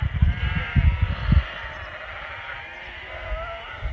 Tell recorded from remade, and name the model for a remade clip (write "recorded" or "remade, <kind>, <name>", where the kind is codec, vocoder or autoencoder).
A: recorded